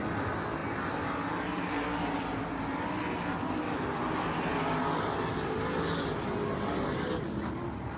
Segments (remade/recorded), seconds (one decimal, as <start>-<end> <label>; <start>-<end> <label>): 0.0-8.0 recorded